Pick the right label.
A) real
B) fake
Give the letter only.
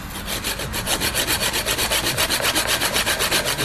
A